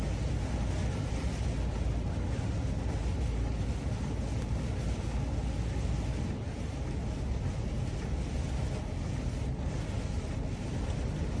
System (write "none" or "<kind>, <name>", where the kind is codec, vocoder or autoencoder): none